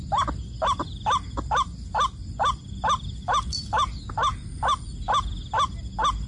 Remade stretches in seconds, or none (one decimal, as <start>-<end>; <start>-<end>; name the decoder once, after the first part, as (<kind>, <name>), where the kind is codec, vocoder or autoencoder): none